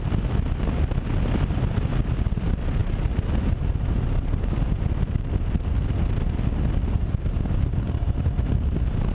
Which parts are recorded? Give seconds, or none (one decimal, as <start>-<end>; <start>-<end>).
0.0-9.1